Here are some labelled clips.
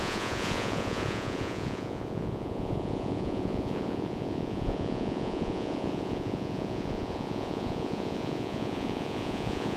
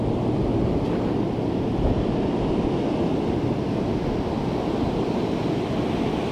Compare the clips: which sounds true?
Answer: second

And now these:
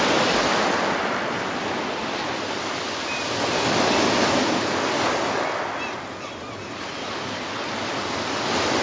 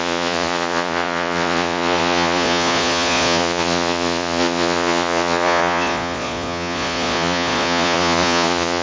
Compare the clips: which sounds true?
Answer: first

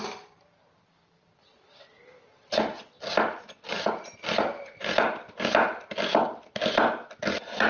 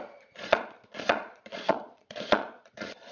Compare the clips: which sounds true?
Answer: first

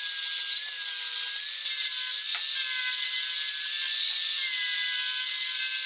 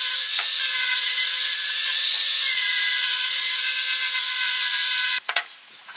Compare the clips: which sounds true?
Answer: first